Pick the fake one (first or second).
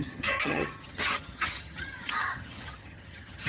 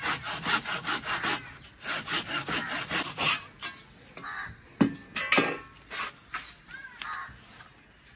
first